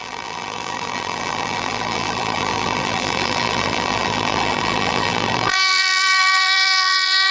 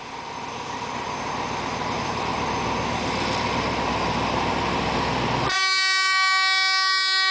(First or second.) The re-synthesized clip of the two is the first